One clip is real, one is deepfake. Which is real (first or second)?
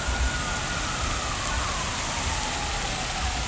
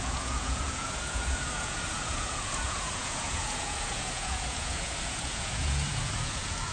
first